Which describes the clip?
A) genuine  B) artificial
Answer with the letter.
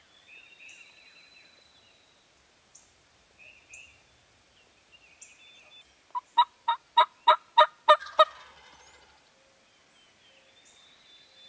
A